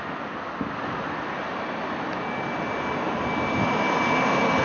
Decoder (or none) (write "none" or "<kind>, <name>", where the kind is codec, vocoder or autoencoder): none